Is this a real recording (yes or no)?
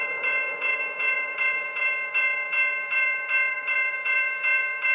no